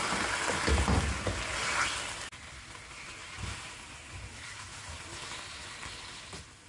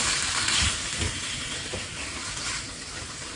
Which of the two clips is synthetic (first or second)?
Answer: second